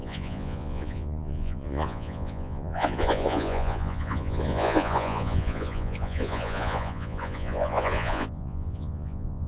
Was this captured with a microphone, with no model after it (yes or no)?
no